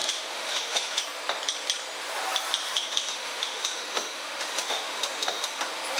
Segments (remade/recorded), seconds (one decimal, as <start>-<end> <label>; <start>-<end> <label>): 0.0-1.0 remade; 1.0-2.6 recorded; 2.6-5.6 remade; 5.6-6.0 recorded